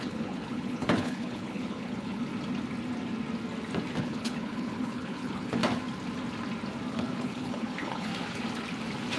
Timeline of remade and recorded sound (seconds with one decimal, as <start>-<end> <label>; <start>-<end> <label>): 0.0-2.3 remade; 2.3-4.0 recorded; 4.0-5.6 remade; 5.6-6.9 recorded; 6.9-8.1 remade; 8.1-9.2 recorded